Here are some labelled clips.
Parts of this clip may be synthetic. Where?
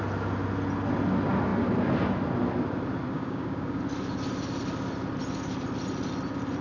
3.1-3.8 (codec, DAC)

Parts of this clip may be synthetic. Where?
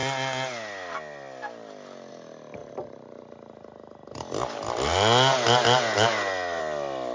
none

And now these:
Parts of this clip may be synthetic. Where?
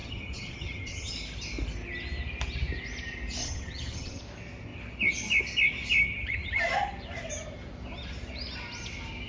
0.0-1.1 (vocoder, HiFi-GAN); 3.4-4.2; 6.0-6.6